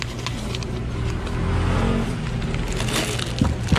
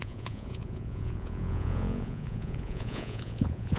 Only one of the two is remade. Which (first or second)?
second